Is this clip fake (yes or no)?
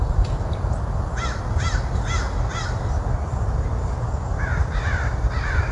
no